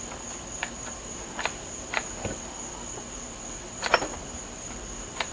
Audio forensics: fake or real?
fake